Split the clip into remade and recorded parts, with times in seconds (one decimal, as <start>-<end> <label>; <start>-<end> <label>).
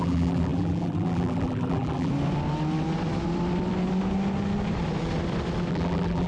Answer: 0.0-2.1 remade; 2.1-5.7 recorded; 5.7-6.3 remade